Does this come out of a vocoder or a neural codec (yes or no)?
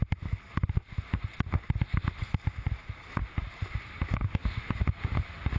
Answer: no